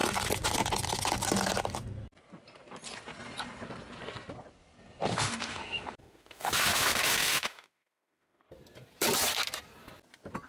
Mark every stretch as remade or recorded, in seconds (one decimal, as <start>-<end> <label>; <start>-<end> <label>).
0.0-5.1 recorded; 5.1-8.4 remade; 8.4-10.5 recorded